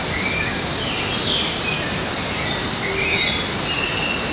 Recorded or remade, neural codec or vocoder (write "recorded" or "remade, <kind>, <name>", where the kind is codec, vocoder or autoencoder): recorded